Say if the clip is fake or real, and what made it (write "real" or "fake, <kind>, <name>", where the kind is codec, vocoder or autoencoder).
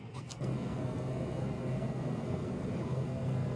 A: fake, codec, SNAC